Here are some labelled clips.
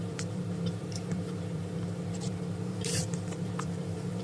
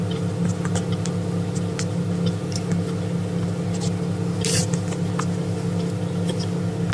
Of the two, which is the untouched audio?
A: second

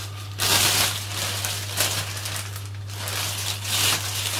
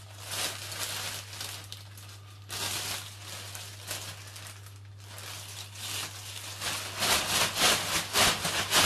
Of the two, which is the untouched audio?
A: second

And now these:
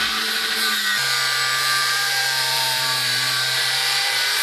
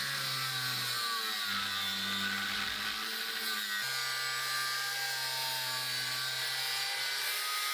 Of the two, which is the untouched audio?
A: second